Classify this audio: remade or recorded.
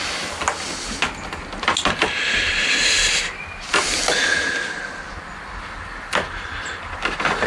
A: recorded